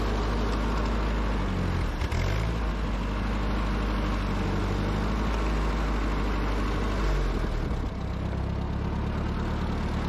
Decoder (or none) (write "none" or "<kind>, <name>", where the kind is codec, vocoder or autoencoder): none